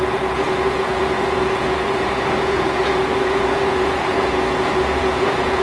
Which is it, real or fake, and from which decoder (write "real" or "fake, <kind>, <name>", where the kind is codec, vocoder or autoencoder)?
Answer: fake, vocoder, Vocos